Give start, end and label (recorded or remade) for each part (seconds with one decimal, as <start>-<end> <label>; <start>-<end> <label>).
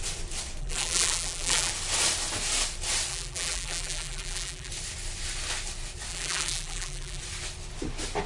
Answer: 0.0-0.6 recorded; 0.6-1.7 remade; 1.7-3.1 recorded; 3.1-4.7 remade; 4.7-6.1 recorded; 6.1-7.2 remade; 7.2-8.3 recorded